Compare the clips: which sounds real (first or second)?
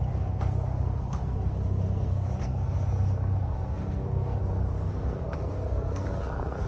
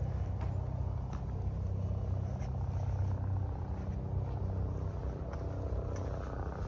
second